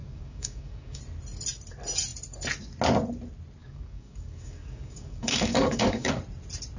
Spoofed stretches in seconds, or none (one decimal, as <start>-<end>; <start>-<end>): 0.0-1.0; 3.6-6.2

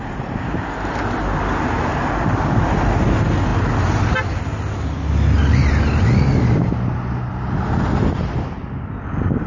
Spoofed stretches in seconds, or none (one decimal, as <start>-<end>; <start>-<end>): none

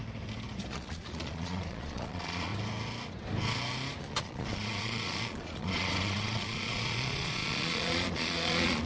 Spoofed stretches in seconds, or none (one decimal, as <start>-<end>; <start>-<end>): 0.7-2.5; 4.0-8.9

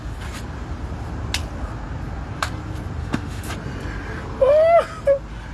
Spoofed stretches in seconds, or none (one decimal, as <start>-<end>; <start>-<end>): 3.0-3.5

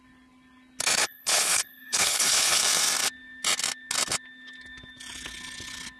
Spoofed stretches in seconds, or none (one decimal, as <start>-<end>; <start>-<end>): 1.0-2.6

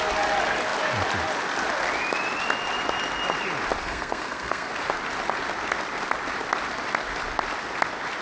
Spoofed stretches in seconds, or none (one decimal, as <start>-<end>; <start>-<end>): 3.8-4.7

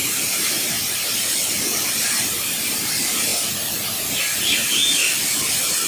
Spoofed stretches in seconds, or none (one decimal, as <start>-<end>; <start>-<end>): 0.0-1.2; 2.0-3.3; 4.1-4.8